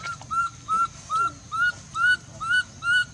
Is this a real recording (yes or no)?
yes